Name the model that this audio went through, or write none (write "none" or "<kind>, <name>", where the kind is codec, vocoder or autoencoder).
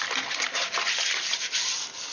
none